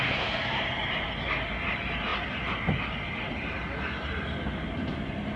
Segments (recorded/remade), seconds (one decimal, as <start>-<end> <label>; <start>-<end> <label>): 0.0-5.4 recorded